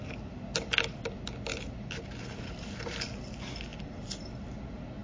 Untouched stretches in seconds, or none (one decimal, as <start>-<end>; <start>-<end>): 0.0-5.0